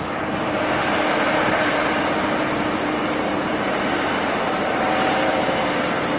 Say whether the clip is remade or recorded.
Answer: remade